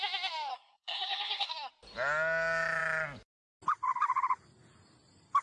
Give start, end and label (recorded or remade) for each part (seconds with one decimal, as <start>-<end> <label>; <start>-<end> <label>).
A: 0.0-0.5 recorded; 0.5-1.7 remade; 1.7-5.4 recorded